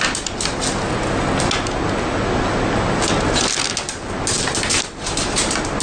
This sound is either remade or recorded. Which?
recorded